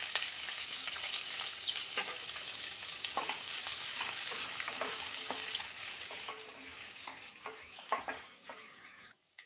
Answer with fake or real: fake